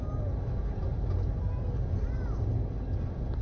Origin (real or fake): real